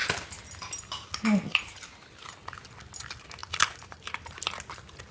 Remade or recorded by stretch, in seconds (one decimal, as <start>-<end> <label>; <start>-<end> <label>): 0.0-3.4 recorded; 3.4-4.2 remade; 4.2-5.1 recorded